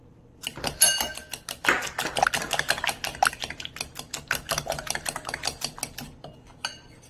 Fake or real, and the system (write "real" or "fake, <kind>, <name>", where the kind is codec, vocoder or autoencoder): real